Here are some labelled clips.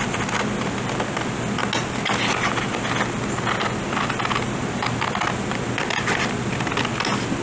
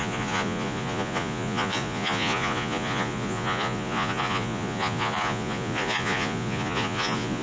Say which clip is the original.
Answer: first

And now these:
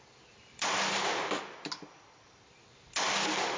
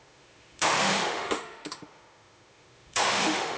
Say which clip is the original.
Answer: first